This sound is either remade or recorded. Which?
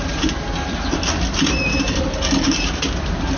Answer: recorded